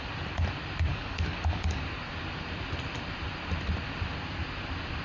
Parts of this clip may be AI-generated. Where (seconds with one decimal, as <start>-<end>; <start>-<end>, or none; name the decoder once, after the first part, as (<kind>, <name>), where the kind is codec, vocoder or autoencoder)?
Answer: 0.9-1.8 (codec, DAC)